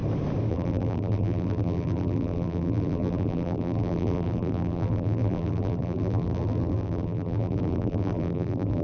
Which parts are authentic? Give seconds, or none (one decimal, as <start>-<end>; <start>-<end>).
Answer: 0.0-0.5